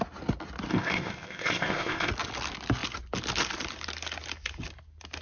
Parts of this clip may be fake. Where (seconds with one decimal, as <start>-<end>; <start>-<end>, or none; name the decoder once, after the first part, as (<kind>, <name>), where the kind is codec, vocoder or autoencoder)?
0.7-2.1 (codec, ZipCodec)